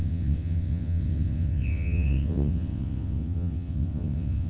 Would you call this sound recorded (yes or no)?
no